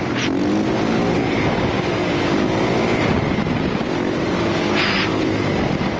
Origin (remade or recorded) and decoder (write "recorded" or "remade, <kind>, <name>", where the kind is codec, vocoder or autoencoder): recorded